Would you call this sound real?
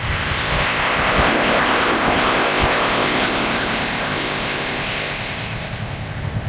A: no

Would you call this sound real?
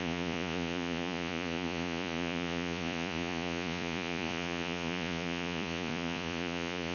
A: no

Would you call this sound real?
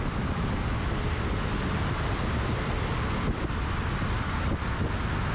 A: yes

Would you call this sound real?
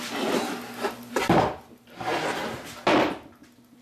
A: yes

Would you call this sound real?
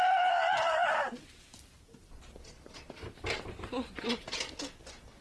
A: yes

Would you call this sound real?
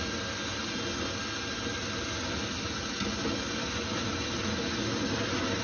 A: yes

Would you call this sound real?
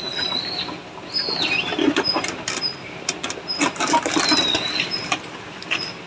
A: no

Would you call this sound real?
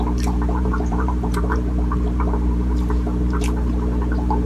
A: no